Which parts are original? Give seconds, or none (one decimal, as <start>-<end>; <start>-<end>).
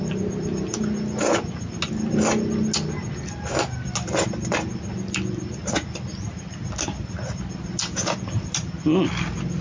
0.0-9.6